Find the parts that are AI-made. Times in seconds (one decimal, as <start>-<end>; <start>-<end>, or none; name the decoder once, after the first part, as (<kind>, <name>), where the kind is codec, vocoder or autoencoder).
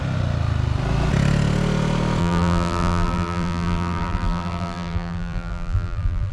2.2-6.3 (vocoder, BigVGAN v2)